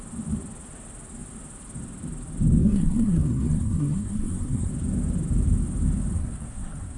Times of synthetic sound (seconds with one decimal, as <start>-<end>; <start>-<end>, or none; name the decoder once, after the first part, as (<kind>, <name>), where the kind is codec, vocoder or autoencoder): 2.6-4.7 (codec, SNAC); 6.2-7.0